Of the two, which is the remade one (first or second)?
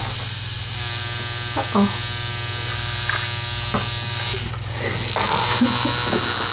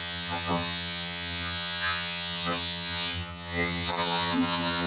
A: second